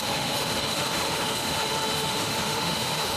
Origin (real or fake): fake